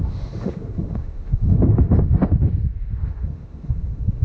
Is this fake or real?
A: fake